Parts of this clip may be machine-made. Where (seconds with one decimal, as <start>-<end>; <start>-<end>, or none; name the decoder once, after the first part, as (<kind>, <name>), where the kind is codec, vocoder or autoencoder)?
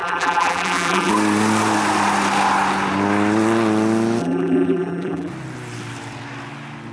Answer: 0.0-1.1 (vocoder, BigVGAN v2); 4.2-5.3